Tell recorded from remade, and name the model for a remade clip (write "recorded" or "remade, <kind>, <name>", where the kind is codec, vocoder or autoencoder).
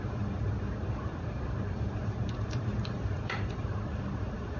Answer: remade, vocoder, BigVGAN v2